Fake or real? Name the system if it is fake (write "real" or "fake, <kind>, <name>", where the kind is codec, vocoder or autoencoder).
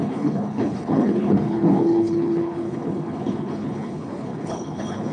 fake, codec, HILCodec